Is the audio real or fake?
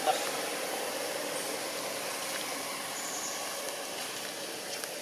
real